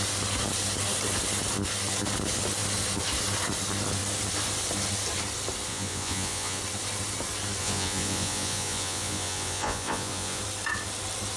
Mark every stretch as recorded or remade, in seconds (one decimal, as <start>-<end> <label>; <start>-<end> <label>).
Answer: 0.0-5.7 recorded; 5.7-6.6 remade; 6.6-7.6 recorded; 7.6-10.4 remade; 10.4-11.4 recorded